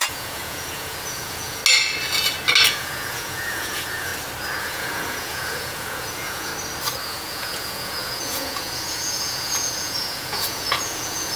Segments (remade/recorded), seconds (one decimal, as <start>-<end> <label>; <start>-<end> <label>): 0.0-1.6 remade; 1.6-2.7 recorded; 2.7-4.1 remade; 4.1-4.6 recorded; 4.6-6.5 remade; 6.5-7.0 recorded; 7.0-11.4 remade